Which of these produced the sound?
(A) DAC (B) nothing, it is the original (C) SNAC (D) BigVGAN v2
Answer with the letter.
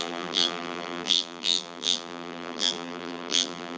D